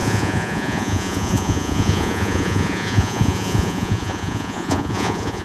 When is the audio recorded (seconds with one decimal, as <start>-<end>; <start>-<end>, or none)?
none